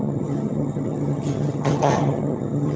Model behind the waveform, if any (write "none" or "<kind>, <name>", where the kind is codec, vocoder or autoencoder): vocoder, HiFi-GAN